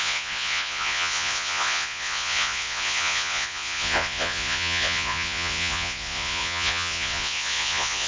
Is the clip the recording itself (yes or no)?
no